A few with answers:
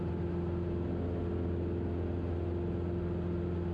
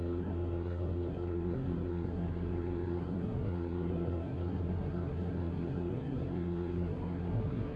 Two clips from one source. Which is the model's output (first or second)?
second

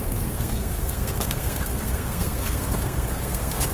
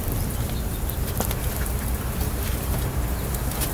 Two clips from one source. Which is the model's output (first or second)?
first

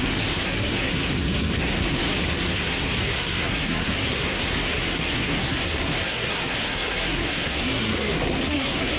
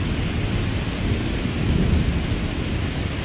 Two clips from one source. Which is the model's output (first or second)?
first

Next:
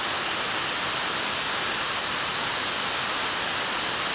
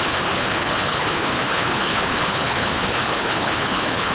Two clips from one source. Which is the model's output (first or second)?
second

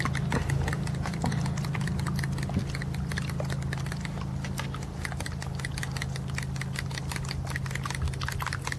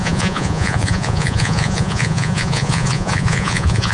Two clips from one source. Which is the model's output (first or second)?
second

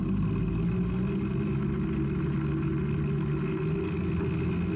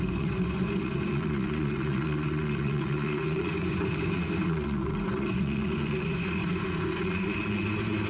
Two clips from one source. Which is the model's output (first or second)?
second